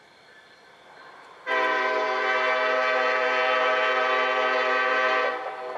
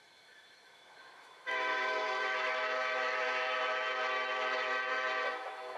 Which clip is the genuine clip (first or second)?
first